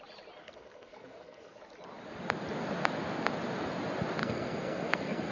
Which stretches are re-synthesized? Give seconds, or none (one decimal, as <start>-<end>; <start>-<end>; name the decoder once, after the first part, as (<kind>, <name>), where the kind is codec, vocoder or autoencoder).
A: 0.4-1.6 (codec, SNAC); 4.2-5.3

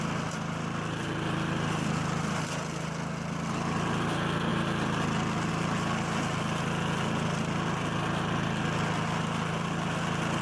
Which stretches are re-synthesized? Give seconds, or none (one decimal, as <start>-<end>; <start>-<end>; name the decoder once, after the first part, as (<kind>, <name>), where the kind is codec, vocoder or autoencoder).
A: none

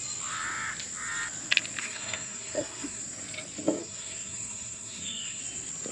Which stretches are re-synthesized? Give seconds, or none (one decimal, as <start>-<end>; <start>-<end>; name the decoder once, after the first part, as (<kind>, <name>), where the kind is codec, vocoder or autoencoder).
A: 1.8-3.0 (codec, SNAC); 3.8-5.4

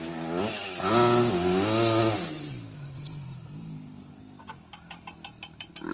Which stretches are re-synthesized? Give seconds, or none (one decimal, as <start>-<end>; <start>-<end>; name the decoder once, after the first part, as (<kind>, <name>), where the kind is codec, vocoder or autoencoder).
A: none

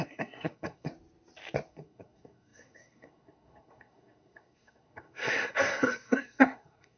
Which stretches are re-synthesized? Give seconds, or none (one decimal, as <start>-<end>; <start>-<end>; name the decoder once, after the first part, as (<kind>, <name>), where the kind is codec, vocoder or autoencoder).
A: 0.0-0.9 (codec, SNAC); 1.7-7.0

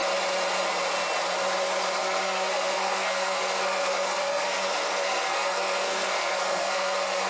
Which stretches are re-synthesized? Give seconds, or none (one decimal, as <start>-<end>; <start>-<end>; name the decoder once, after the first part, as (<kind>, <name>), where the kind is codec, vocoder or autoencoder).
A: 2.0-7.3 (codec, SNAC)

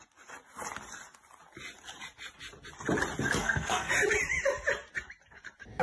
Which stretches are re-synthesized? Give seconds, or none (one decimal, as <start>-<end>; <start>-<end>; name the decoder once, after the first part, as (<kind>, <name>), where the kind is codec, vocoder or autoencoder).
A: 3.4-3.9 (codec, SNAC)